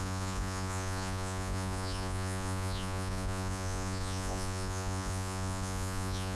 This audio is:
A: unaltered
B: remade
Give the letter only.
B